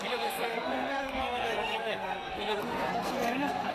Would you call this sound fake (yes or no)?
yes